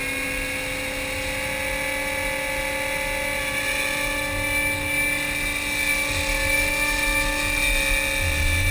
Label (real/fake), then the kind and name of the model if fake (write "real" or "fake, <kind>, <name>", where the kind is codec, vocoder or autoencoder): real